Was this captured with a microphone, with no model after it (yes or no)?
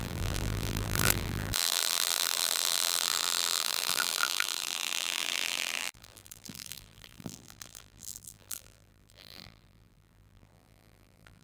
no